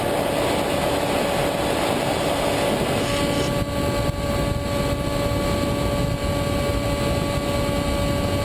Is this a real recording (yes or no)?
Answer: yes